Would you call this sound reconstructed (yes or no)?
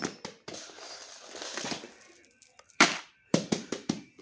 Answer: yes